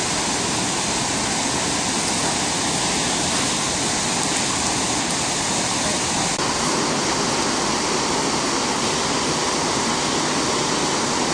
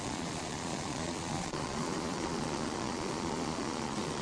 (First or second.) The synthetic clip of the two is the second